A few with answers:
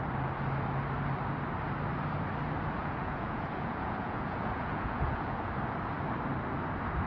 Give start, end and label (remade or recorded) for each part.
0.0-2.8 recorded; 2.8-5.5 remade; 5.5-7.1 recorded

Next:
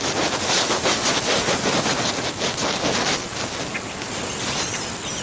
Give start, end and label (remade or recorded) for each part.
0.0-5.2 recorded

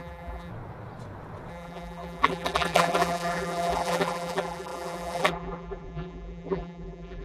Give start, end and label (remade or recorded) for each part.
0.0-0.5 remade; 0.5-1.5 recorded; 1.5-7.2 remade